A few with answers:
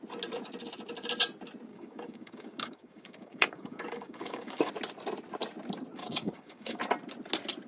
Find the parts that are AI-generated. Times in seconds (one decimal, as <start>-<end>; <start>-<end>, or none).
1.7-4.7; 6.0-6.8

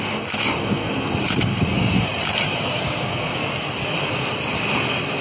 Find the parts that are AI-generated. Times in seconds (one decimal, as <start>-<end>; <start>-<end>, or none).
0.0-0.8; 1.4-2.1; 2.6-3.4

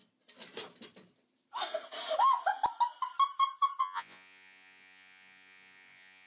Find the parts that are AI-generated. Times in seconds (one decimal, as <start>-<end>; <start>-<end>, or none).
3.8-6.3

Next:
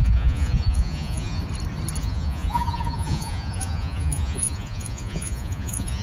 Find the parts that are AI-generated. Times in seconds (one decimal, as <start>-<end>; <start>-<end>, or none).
0.0-1.4; 2.0-6.0

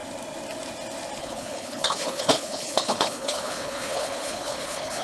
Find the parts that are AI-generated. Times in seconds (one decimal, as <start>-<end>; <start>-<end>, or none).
1.2-5.0

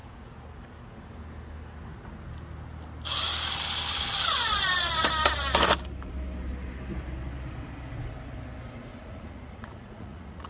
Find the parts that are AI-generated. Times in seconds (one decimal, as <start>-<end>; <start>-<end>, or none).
8.9-10.5

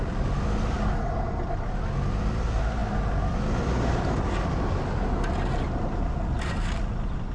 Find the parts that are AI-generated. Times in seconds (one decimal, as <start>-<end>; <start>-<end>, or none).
none

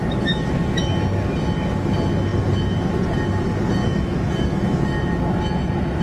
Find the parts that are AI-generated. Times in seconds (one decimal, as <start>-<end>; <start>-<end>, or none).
0.0-0.6; 3.8-4.8